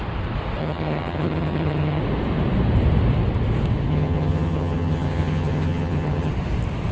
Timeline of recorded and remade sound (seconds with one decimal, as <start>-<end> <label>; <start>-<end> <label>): 0.0-0.6 recorded; 0.6-2.0 remade; 2.0-3.9 recorded; 3.9-6.3 remade; 6.3-6.9 recorded